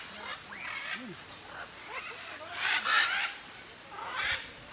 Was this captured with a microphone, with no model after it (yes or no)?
yes